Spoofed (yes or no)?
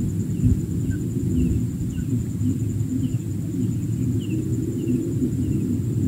no